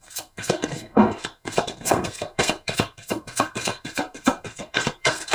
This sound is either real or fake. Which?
fake